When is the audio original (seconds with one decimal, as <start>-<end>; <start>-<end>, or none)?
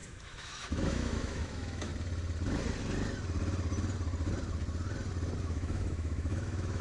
1.9-5.4